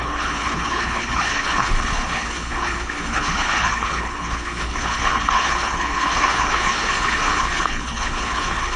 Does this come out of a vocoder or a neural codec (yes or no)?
yes